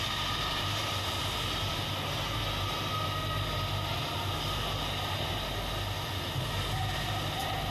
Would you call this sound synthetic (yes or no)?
no